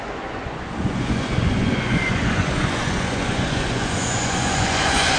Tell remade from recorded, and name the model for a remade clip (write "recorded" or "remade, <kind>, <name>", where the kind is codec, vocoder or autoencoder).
remade, vocoder, Vocos